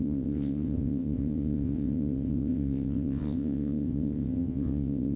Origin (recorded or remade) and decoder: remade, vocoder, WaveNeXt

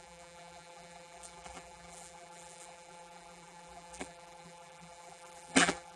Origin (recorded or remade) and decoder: remade, vocoder, BigVGAN v2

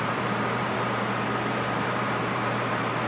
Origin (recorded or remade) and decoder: remade, vocoder, BigVGAN v2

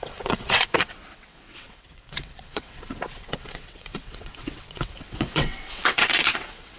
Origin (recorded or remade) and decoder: remade, vocoder, WaveNeXt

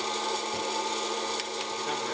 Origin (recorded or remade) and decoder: recorded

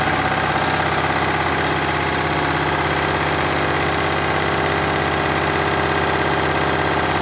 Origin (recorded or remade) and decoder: remade, vocoder, BigVGAN v2